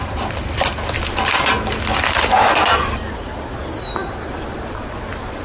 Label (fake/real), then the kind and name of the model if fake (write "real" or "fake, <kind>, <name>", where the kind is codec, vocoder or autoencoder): real